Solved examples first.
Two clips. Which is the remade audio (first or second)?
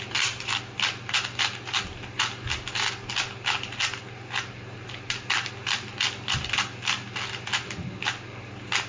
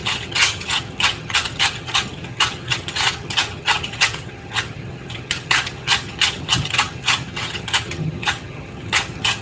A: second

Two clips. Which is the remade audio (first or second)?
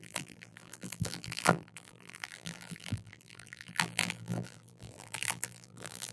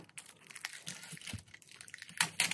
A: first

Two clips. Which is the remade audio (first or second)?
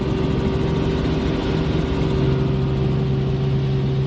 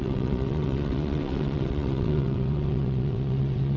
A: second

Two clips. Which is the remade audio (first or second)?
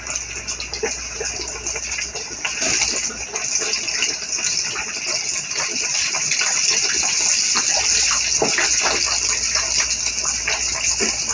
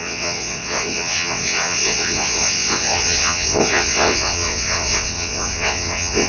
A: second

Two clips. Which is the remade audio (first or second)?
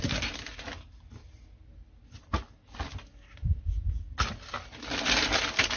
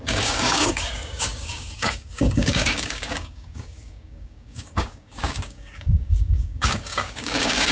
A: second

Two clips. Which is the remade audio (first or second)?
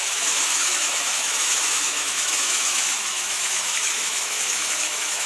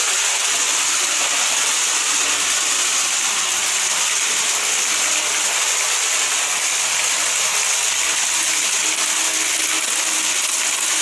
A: first